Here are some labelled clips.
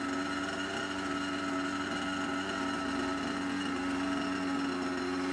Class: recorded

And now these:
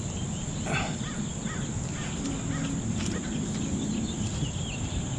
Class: recorded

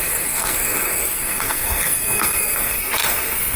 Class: remade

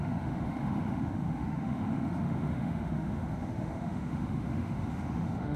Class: remade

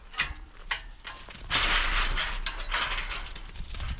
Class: recorded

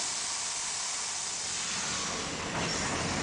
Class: recorded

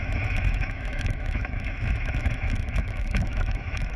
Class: remade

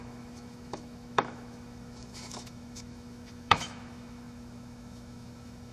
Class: remade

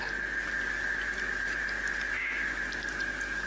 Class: recorded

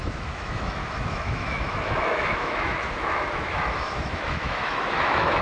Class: remade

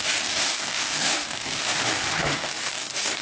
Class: remade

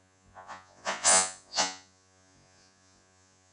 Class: remade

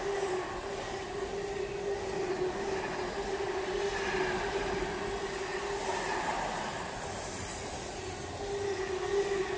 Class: recorded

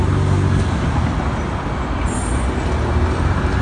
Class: recorded